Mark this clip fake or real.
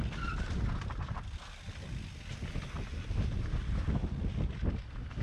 real